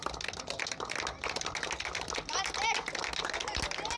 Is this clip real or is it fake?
real